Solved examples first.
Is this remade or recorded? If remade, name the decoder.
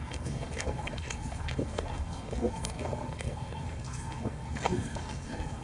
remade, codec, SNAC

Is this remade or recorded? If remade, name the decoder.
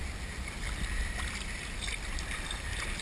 recorded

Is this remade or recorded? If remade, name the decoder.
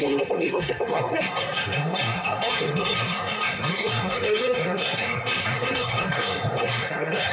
remade, codec, SNAC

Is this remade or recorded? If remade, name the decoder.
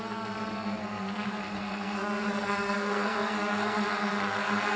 remade, codec, SNAC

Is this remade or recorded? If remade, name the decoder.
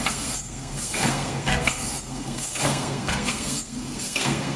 remade, codec, SNAC